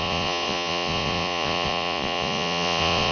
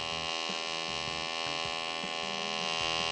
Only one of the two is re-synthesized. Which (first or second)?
first